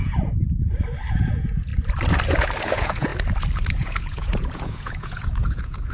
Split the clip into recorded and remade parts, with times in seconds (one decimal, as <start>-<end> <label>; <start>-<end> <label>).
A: 0.0-0.4 remade; 0.4-1.1 recorded; 1.1-1.7 remade; 1.7-2.6 recorded; 2.6-3.1 remade; 3.1-3.7 recorded; 3.7-5.9 remade